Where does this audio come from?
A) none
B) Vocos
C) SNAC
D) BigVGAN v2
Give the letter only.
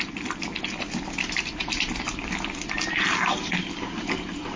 A